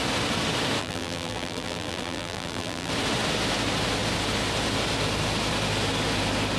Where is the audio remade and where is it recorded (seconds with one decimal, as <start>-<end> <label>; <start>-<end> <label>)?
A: 0.0-0.8 recorded; 0.8-2.9 remade; 2.9-6.6 recorded